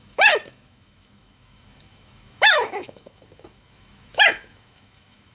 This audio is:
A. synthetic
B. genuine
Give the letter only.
A